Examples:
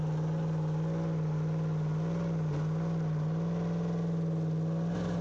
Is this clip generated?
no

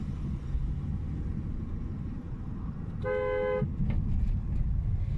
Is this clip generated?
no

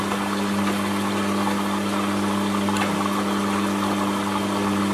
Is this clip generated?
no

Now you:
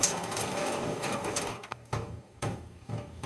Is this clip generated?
yes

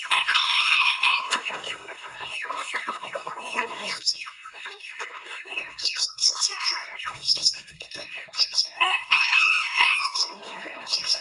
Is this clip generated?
yes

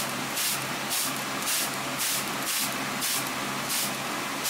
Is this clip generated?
no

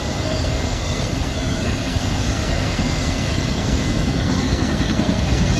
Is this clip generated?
yes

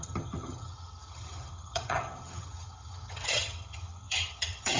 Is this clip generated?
yes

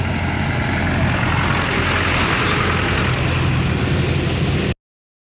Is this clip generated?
no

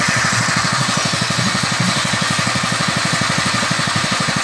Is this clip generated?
yes